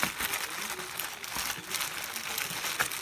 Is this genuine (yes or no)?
yes